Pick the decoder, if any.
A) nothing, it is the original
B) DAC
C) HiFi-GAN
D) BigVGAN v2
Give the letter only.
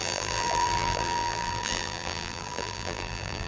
D